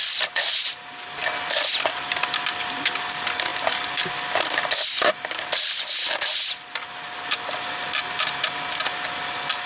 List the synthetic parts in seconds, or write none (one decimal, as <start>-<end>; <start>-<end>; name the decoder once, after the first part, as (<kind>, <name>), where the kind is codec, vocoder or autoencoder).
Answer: none